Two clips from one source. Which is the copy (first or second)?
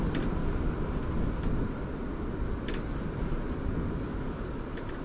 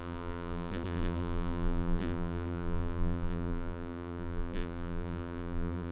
second